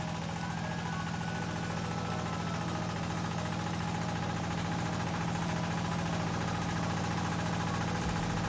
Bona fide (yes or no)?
yes